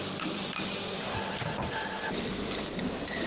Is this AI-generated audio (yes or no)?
yes